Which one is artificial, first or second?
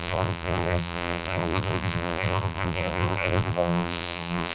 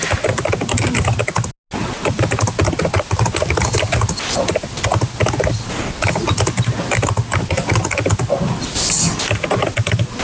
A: first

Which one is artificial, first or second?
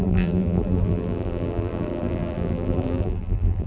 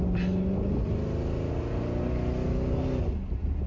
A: first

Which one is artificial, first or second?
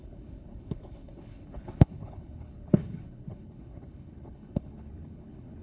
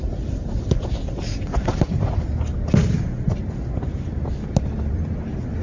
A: first